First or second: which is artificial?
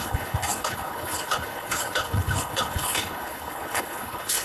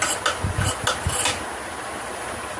first